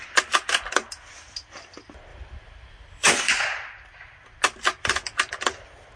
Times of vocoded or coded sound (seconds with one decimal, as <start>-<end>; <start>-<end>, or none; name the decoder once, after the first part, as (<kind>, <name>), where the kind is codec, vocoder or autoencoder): 2.1-3.1 (vocoder, BigVGAN v2)